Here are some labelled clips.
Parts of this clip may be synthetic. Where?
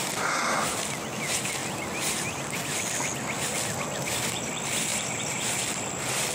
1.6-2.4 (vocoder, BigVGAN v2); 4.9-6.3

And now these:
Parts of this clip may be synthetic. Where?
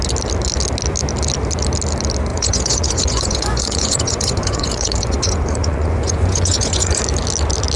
2.3-7.0 (vocoder, Vocos)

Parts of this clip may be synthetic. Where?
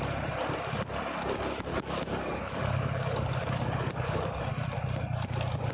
1.7-4.5 (codec, DAC)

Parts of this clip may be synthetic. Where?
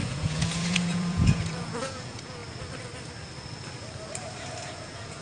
0.0-2.4 (vocoder, Vocos); 4.6-5.2